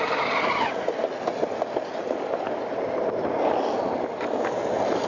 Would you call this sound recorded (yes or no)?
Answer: yes